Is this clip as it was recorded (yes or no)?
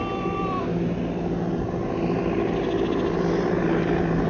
yes